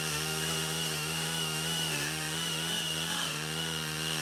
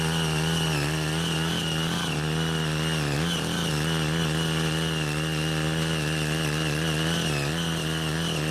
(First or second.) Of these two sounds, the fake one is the first